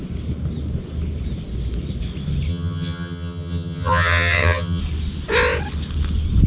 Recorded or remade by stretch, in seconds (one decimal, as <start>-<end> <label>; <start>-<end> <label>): 0.0-2.5 recorded; 2.5-4.8 remade; 4.8-6.5 recorded